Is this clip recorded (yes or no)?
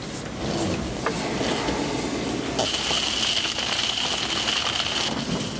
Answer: yes